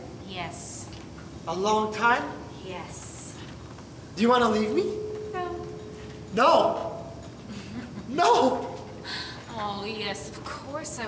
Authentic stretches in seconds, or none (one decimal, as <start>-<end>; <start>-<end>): 0.0-11.1